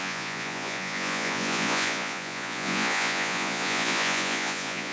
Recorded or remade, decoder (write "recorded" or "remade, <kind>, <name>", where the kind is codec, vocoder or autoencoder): remade, vocoder, Vocos